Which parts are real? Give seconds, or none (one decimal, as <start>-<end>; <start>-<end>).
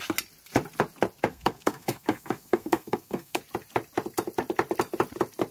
0.0-1.3; 3.4-5.5